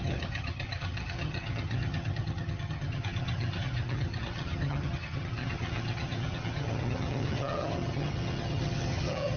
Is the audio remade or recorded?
remade